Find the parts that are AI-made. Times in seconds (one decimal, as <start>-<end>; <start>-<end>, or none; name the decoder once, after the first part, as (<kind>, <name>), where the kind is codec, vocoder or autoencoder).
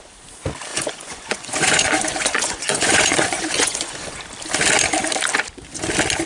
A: 0.7-4.2 (vocoder, Vocos)